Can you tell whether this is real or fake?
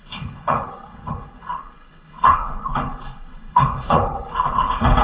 fake